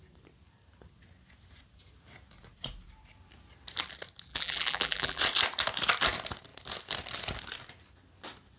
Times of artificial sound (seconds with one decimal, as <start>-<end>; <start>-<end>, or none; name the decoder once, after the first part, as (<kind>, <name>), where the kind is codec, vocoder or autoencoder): 4.3-5.2 (vocoder, BigVGAN v2)